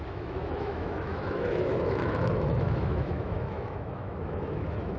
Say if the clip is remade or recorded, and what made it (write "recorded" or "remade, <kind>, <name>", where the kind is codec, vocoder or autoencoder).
remade, autoencoder, DAC-VAE